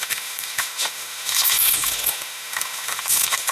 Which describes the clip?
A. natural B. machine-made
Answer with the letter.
B